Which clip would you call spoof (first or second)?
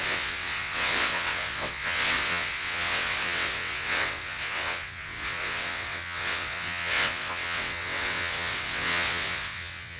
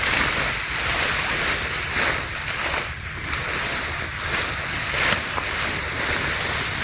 first